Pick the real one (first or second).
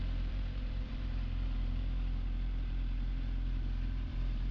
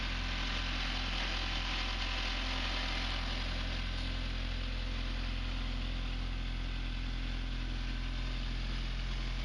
second